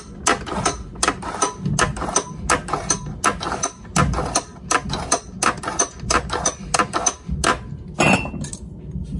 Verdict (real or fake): real